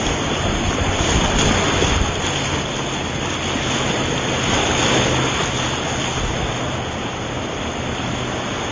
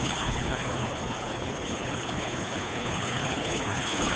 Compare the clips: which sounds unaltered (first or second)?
first